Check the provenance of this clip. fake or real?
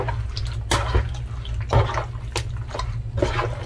real